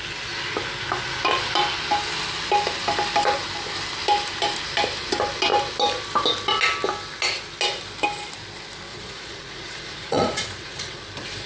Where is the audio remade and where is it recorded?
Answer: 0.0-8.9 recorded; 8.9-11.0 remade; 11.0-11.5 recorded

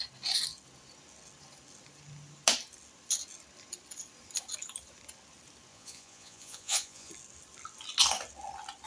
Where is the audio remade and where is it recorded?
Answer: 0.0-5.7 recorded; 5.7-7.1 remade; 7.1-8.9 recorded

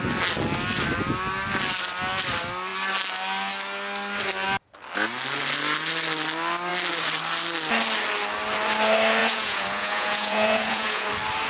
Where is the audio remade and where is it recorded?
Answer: 0.0-9.2 recorded; 9.2-11.1 remade; 11.1-11.5 recorded